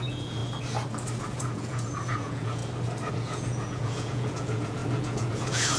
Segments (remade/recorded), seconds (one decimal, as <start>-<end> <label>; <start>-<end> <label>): 0.0-0.4 remade; 0.4-1.2 recorded; 1.2-2.6 remade; 2.6-3.1 recorded; 3.1-5.8 remade